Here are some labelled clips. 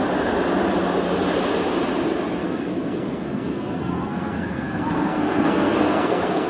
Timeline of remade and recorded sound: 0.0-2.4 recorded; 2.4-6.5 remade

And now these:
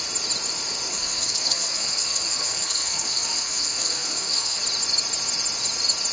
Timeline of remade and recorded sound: 0.0-0.9 recorded; 0.9-4.6 remade; 4.6-6.1 recorded

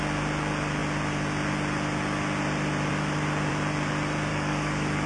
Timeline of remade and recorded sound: 0.0-4.3 recorded; 4.3-5.1 remade